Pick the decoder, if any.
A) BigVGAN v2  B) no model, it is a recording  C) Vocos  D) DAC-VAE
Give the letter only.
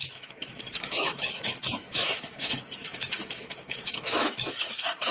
D